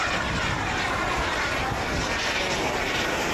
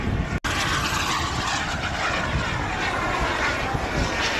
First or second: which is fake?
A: first